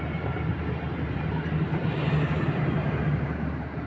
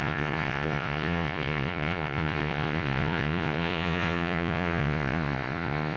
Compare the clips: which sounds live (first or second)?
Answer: first